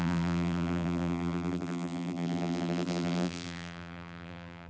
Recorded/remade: remade